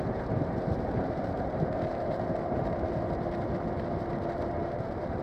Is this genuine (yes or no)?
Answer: no